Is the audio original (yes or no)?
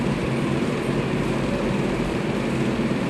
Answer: no